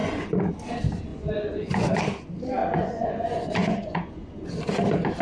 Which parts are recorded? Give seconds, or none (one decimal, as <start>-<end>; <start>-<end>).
0.5-1.1; 2.0-2.6; 4.5-5.2